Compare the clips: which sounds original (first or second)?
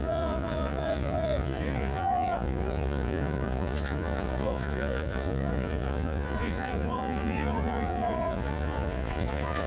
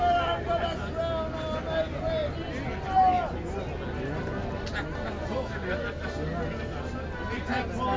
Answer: second